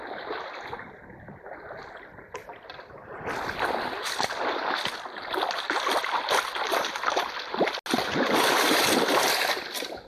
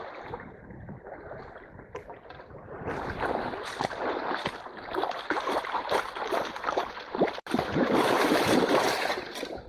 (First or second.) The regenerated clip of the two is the second